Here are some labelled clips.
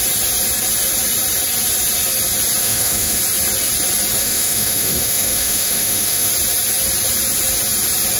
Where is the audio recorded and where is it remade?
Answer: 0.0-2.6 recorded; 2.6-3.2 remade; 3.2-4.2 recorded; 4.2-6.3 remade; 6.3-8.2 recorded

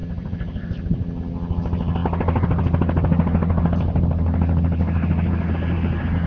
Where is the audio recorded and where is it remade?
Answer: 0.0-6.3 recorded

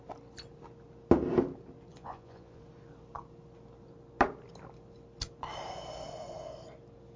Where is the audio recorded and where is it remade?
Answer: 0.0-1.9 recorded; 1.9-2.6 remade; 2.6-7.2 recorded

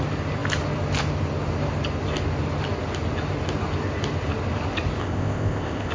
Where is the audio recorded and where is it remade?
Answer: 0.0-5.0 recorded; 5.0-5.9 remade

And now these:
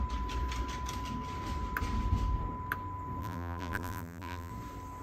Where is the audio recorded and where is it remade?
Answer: 0.0-3.2 recorded; 3.2-4.5 remade; 4.5-5.0 recorded